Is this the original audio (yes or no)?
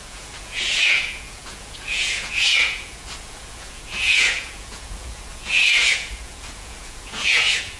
no